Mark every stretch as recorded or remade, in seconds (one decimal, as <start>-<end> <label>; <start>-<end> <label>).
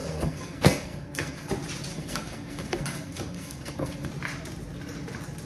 0.0-1.5 remade; 1.5-1.9 recorded; 1.9-4.1 remade; 4.1-5.5 recorded